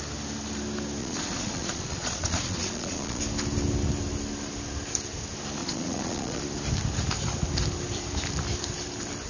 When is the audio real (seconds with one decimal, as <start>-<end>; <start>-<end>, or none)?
0.0-1.0; 3.2-5.6; 6.4-9.3